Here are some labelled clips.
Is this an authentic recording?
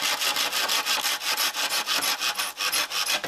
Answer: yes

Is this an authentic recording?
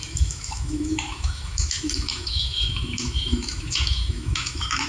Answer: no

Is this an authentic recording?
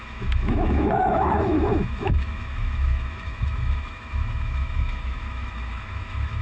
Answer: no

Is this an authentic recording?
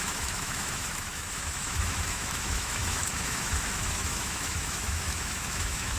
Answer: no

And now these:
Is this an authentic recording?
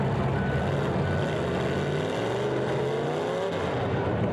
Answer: yes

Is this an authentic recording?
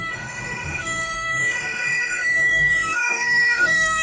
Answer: no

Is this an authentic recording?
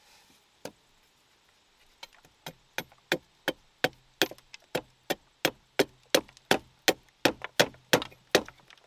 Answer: yes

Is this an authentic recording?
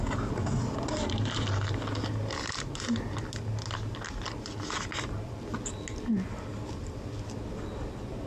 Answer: yes